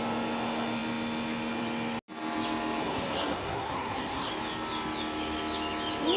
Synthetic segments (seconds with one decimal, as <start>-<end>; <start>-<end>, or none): 2.8-4.3